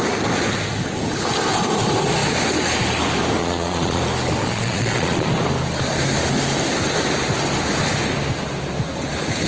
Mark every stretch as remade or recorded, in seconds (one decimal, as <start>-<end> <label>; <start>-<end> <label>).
0.0-3.4 recorded; 3.4-4.0 remade; 4.0-4.4 recorded; 4.4-5.3 remade; 5.3-9.5 recorded